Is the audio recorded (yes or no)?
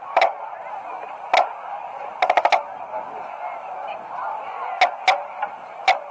yes